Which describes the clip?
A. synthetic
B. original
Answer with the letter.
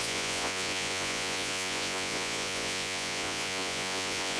A